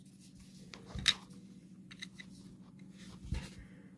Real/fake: real